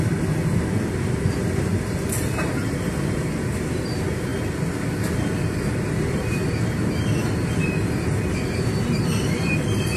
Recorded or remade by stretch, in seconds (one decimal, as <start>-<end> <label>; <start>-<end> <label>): 0.0-10.0 recorded